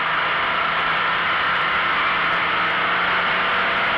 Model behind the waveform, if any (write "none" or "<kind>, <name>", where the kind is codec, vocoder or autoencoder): none